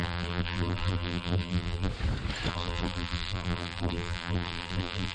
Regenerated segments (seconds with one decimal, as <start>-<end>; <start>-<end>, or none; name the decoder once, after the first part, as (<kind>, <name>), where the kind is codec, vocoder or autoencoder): 0.0-1.9 (vocoder, BigVGAN v2); 2.5-5.1